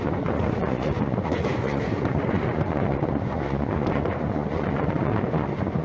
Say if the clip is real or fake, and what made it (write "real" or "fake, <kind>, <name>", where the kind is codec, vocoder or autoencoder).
fake, vocoder, Vocos